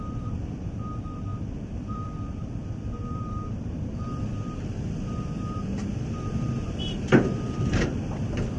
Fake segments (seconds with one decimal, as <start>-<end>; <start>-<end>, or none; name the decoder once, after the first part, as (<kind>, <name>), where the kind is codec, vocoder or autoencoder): 0.0-4.3 (vocoder, BigVGAN v2); 5.1-8.6